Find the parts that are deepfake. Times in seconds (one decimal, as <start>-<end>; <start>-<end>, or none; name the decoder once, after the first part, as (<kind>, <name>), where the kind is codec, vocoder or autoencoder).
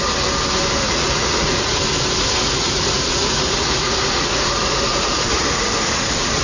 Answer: 0.8-1.8 (vocoder, Vocos); 2.4-6.4